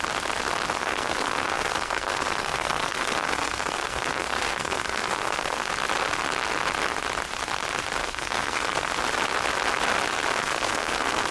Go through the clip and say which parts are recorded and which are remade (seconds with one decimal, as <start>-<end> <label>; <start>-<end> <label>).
0.0-0.8 recorded; 0.8-5.7 remade; 5.7-8.0 recorded; 8.0-8.9 remade; 8.9-10.4 recorded; 10.4-11.3 remade

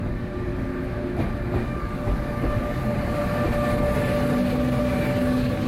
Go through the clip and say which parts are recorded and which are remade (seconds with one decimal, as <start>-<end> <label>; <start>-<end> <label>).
0.0-0.5 remade; 0.5-1.4 recorded; 1.4-3.2 remade; 3.2-4.8 recorded; 4.8-5.7 remade

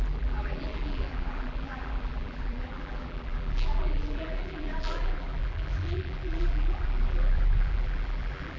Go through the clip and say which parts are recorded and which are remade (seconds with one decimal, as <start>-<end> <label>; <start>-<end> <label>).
0.0-8.6 remade

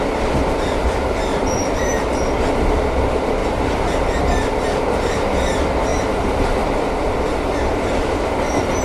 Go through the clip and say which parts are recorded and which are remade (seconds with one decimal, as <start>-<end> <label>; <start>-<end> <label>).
0.0-1.3 recorded; 1.3-2.2 remade; 2.2-3.4 recorded; 3.4-4.2 remade; 4.2-8.8 recorded

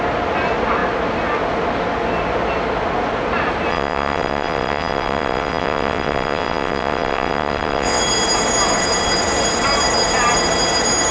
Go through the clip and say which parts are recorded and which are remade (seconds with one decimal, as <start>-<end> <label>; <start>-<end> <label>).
0.0-3.7 recorded; 3.7-8.0 remade; 8.0-11.1 recorded